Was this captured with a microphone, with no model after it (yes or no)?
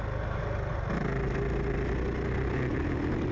yes